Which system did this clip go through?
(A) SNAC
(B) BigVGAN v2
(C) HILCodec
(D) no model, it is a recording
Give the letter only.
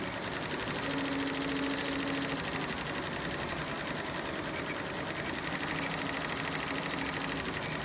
D